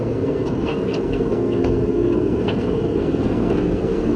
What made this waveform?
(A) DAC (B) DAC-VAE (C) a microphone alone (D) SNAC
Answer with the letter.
D